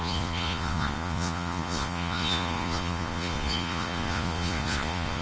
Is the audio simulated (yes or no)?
yes